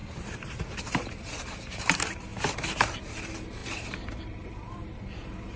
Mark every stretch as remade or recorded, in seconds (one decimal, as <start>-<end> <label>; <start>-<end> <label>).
0.0-2.3 remade; 2.3-3.2 recorded; 3.2-5.6 remade